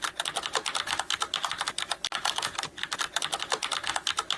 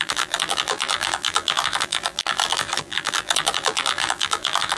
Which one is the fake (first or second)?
second